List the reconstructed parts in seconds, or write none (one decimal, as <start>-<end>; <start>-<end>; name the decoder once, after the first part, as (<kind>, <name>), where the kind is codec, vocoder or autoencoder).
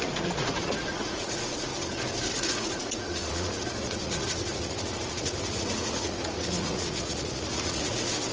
0.0-1.7 (vocoder, Vocos); 2.3-8.3